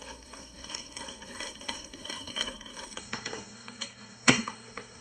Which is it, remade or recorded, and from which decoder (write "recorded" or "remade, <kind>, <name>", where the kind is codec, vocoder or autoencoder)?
remade, codec, SNAC